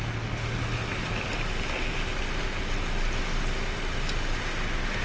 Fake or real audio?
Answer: real